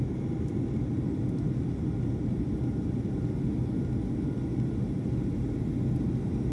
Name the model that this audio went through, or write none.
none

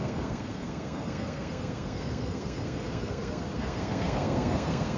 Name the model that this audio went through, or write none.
codec, SNAC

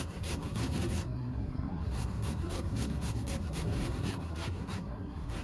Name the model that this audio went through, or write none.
codec, SNAC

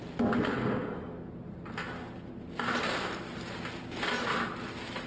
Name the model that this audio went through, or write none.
none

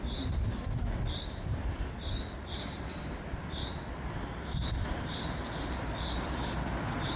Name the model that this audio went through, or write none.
vocoder, BigVGAN v2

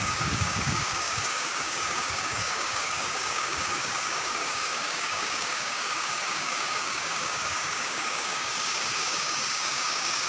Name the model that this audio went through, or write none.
codec, DAC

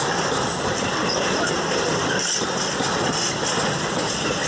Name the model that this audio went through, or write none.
vocoder, BigVGAN v2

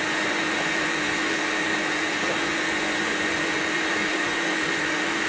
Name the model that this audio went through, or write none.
vocoder, Vocos